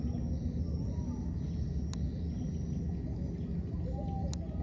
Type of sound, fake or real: real